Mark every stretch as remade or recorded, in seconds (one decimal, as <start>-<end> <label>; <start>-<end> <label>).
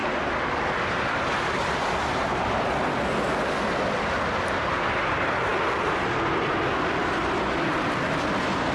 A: 0.0-8.7 recorded